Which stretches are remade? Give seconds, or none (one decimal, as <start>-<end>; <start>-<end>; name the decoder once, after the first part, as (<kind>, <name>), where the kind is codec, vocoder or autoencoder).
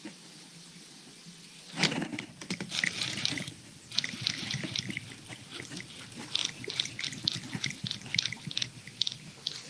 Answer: 2.1-4.8 (vocoder, BigVGAN v2); 6.4-6.9